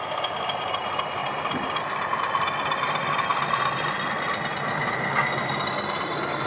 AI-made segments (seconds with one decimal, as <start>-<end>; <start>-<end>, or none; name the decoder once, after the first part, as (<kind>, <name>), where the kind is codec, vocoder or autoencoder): none